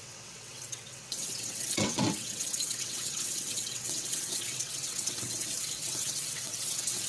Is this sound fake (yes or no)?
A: yes